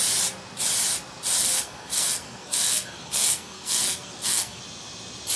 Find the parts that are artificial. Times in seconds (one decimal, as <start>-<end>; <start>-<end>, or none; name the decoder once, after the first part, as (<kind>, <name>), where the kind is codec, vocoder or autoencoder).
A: 1.4-4.6 (codec, SNAC)